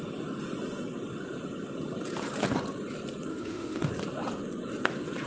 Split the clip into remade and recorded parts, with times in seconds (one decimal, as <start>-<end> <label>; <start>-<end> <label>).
0.0-3.3 recorded; 3.3-3.9 remade; 3.9-5.3 recorded